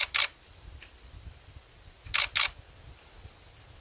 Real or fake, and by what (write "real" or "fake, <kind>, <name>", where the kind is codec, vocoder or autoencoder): real